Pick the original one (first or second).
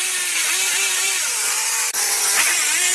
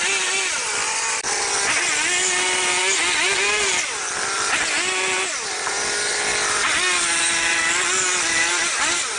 second